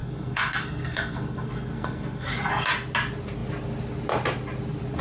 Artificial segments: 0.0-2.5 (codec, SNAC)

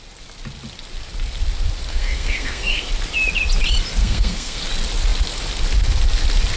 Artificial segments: 1.9-2.9 (codec, SNAC); 4.0-4.6